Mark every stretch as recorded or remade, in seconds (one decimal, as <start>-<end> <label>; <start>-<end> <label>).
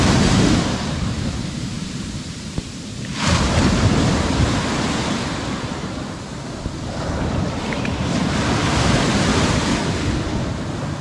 0.0-9.3 remade; 9.3-10.3 recorded; 10.3-11.0 remade